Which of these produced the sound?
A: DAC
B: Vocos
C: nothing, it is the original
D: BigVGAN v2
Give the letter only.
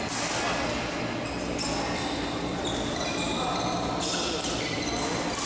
C